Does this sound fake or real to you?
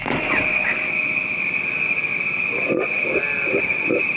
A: real